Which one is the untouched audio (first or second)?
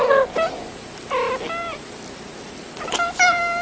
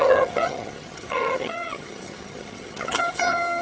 first